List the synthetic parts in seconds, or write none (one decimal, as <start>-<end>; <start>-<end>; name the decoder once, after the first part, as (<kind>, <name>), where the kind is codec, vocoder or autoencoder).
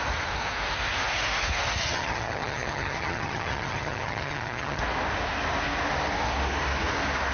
1.8-4.8 (vocoder, HiFi-GAN)